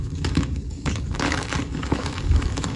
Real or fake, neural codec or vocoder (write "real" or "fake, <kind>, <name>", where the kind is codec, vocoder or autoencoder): fake, codec, DAC